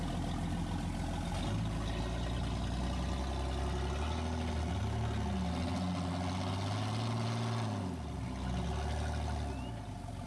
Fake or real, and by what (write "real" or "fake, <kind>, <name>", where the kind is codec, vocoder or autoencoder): real